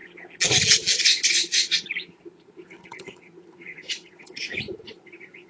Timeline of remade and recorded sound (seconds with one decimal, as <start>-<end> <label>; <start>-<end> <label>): 0.0-1.3 recorded; 1.3-5.5 remade